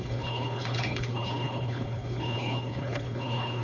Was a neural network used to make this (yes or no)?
yes